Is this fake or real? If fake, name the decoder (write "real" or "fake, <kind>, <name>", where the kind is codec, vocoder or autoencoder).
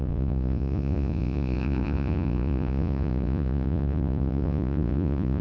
fake, vocoder, Vocos